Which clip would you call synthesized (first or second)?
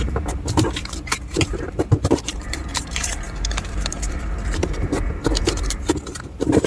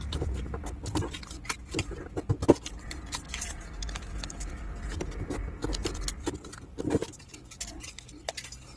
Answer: first